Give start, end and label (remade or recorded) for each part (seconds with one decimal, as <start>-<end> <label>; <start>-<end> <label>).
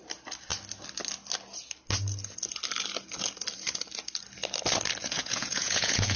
0.0-5.0 recorded; 5.0-6.2 remade